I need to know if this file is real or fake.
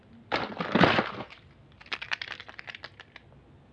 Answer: real